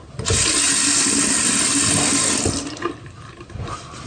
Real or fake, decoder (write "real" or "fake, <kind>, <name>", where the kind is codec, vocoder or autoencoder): real